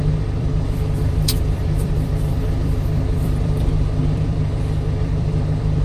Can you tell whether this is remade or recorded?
remade